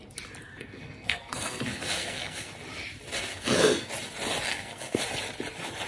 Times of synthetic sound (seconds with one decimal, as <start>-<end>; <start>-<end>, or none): 0.5-2.5; 3.3-3.9; 4.5-5.0